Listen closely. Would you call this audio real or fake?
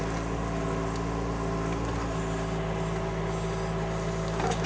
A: real